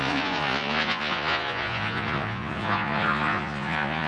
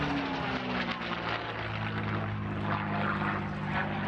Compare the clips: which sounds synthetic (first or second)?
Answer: first